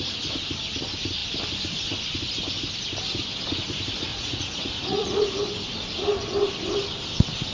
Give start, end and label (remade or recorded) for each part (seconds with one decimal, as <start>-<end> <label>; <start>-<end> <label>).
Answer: 0.0-4.1 recorded; 4.1-5.4 remade; 5.4-7.5 recorded

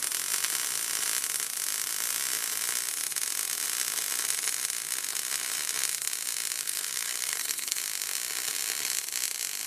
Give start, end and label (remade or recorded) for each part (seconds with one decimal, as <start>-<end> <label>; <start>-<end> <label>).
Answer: 0.0-6.6 recorded; 6.6-7.8 remade; 7.8-9.7 recorded

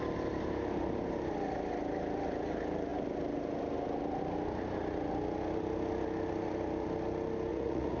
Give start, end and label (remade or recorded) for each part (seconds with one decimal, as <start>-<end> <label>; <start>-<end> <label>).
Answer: 0.0-7.5 recorded; 7.5-8.0 remade

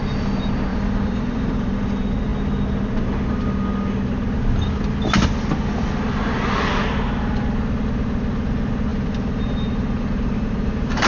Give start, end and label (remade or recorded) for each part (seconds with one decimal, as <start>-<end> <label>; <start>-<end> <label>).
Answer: 0.0-0.7 recorded; 0.7-1.9 remade; 1.9-8.9 recorded; 8.9-11.1 remade

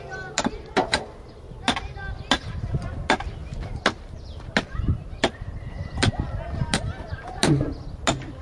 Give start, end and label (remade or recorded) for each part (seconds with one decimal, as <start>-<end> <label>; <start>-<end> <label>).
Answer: 0.0-8.4 recorded

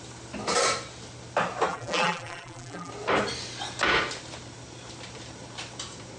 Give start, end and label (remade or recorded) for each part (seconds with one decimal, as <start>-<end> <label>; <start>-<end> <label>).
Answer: 0.0-1.7 recorded; 1.7-2.9 remade; 2.9-6.2 recorded

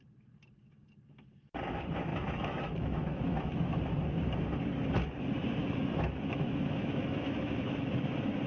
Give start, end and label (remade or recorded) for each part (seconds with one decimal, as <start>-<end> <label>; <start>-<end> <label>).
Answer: 0.0-2.1 recorded; 2.1-3.8 remade; 3.8-5.6 recorded; 5.6-8.0 remade; 8.0-8.5 recorded

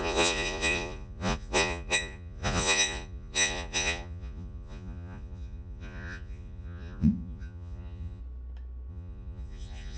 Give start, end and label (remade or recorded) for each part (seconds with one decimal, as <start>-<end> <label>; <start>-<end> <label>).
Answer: 0.0-8.2 remade; 8.2-8.9 recorded; 8.9-10.0 remade